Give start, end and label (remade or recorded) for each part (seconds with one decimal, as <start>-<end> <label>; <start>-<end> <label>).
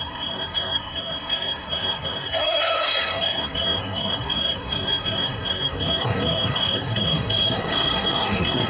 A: 0.0-8.7 remade